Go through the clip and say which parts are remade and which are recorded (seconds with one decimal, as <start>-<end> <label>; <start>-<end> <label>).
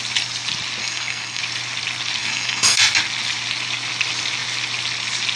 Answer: 0.0-0.8 recorded; 0.8-1.4 remade; 1.4-2.2 recorded; 2.2-2.8 remade; 2.8-5.4 recorded